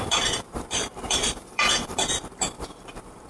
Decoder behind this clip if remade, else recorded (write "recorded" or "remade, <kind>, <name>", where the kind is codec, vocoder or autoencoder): remade, vocoder, BigVGAN v2